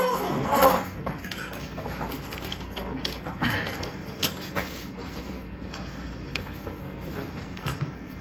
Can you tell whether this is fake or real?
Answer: fake